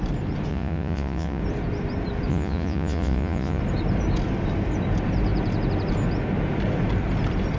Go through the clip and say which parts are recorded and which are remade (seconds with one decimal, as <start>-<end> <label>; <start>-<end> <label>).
0.0-0.5 recorded; 0.5-1.4 remade; 1.4-2.3 recorded; 2.3-3.6 remade; 3.6-7.6 recorded

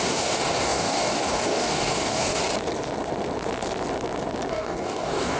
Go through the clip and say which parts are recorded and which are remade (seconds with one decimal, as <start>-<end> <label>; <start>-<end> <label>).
0.0-2.4 remade; 2.4-4.5 recorded; 4.5-5.4 remade

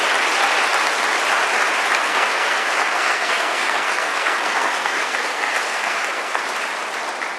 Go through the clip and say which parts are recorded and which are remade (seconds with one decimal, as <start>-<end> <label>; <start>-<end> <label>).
0.0-2.0 recorded; 2.0-6.4 remade; 6.4-7.4 recorded

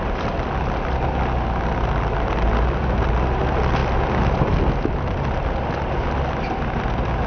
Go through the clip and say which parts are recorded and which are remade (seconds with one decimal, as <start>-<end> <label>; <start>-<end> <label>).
0.0-7.3 recorded

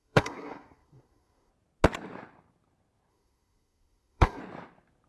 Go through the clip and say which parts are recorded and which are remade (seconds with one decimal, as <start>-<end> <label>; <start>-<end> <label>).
0.0-1.5 remade; 1.5-3.1 recorded; 3.1-4.4 remade; 4.4-5.1 recorded